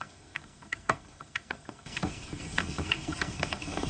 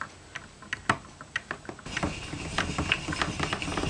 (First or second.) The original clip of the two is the second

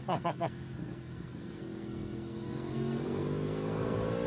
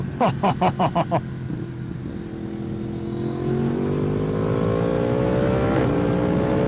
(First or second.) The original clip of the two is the second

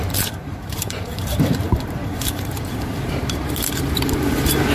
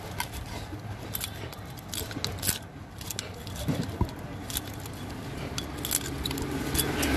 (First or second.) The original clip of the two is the second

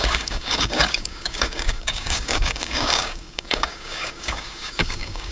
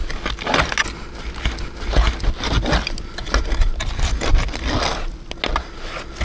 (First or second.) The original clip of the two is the second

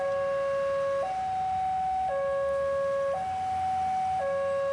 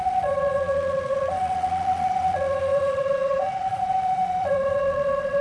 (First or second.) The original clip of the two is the first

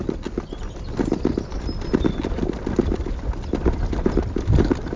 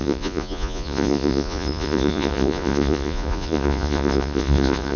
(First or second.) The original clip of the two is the first